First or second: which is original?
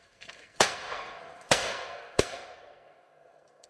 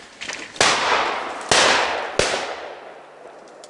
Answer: second